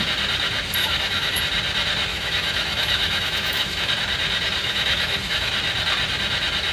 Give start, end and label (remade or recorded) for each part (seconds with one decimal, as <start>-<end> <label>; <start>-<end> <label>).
0.0-0.8 recorded; 0.8-1.4 remade; 1.4-2.1 recorded; 2.1-3.9 remade; 3.9-4.6 recorded; 4.6-5.5 remade; 5.5-6.7 recorded